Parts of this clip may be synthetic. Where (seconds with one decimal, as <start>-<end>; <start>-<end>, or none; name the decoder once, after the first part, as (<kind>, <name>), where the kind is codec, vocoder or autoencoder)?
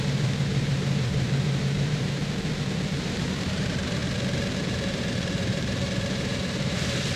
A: 0.0-2.2 (vocoder, BigVGAN v2); 3.0-4.0; 4.6-7.2